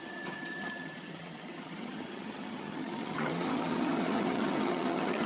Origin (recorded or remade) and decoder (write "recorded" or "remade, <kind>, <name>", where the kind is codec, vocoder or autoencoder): remade, vocoder, HiFi-GAN